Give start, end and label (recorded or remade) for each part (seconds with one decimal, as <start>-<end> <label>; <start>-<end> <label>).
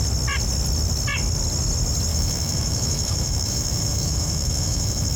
0.0-2.1 recorded; 2.1-5.2 remade